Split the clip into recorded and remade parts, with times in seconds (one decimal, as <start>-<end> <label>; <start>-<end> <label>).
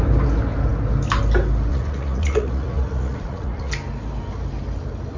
0.0-1.7 recorded; 1.7-3.7 remade; 3.7-5.2 recorded